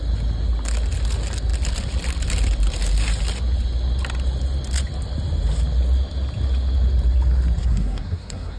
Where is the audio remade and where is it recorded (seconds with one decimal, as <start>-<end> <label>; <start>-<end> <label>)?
0.0-7.6 recorded; 7.6-8.6 remade